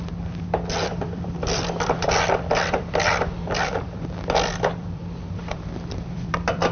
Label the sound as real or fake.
fake